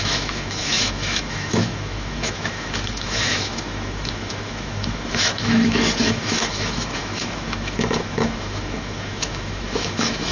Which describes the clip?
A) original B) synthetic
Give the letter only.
B